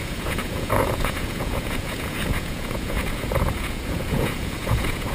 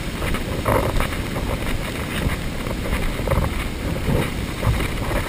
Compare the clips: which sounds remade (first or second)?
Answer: first